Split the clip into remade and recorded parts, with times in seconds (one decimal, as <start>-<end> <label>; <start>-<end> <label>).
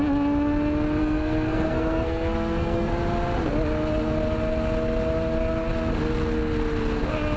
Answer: 0.0-1.0 recorded; 1.0-2.9 remade; 2.9-7.4 recorded